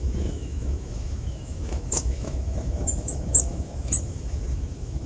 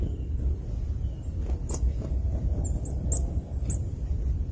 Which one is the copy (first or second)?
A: first